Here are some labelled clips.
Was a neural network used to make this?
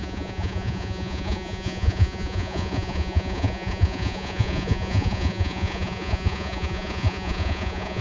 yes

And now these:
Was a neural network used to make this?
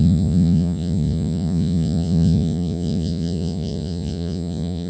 yes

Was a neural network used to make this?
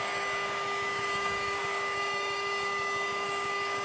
yes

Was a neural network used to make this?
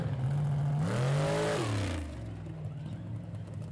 no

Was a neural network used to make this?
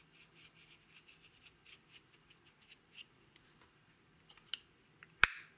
no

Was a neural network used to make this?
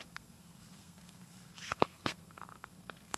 yes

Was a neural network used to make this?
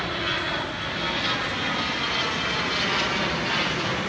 no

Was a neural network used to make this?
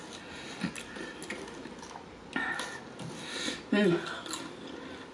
no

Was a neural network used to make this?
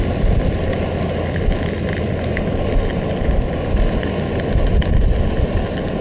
no